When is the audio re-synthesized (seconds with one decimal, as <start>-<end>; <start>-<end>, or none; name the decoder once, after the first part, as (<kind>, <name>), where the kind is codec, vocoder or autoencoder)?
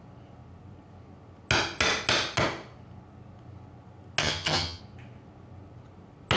4.2-4.8 (vocoder, HiFi-GAN)